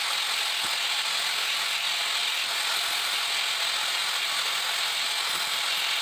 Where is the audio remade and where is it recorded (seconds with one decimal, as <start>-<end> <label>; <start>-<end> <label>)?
0.0-6.0 recorded